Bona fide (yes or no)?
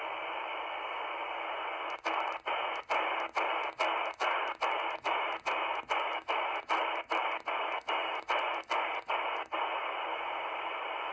yes